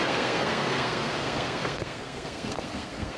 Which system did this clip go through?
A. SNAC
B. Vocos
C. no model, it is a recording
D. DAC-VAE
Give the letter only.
A